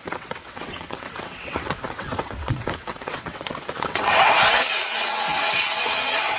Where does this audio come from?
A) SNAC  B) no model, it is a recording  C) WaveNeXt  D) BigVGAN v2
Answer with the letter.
C